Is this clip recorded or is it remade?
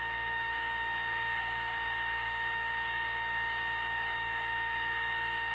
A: remade